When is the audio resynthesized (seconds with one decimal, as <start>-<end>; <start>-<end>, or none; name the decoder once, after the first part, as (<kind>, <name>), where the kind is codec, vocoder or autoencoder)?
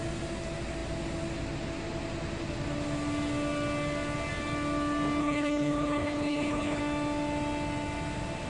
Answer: 5.2-6.8 (codec, HILCodec)